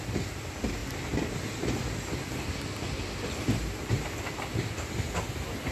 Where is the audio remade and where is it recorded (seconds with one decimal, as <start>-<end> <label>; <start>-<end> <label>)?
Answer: 0.0-5.7 recorded